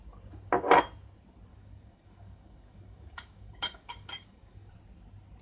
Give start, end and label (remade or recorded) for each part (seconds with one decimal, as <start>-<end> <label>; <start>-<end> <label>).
0.0-1.5 recorded; 1.5-4.7 remade; 4.7-5.4 recorded